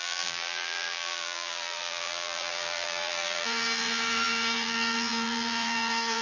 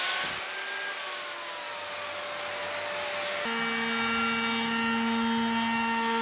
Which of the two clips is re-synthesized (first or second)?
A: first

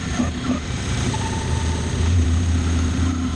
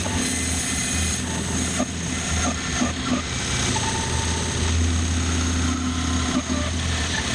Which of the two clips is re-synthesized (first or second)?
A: first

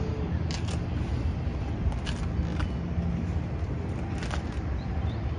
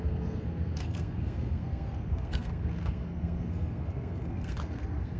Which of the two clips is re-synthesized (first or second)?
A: second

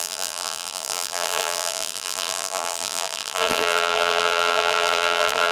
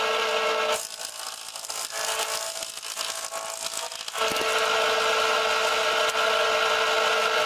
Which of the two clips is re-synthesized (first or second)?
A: first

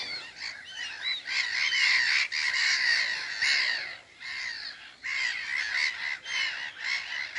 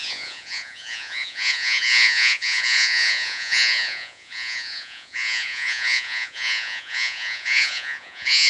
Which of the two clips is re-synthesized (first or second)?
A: second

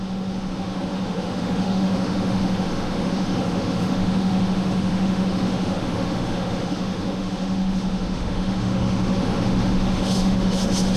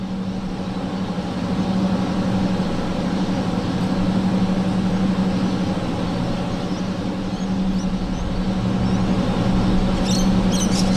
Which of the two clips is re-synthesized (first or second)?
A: first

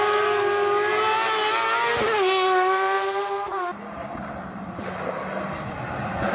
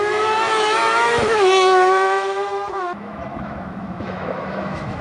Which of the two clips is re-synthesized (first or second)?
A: second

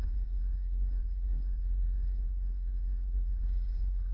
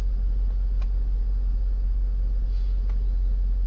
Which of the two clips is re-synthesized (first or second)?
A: first